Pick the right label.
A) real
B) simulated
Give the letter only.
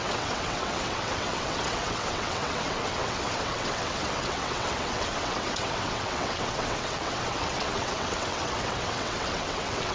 B